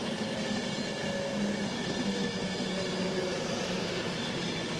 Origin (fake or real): real